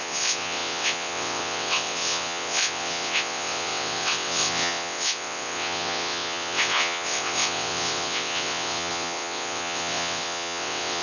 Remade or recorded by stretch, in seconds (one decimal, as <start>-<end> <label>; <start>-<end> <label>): 0.0-11.0 remade